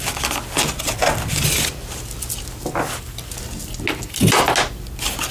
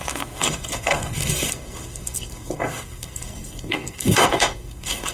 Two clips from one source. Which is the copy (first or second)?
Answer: second